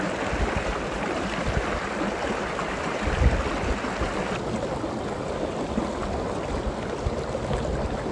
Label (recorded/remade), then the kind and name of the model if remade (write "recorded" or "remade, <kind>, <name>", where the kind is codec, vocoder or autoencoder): recorded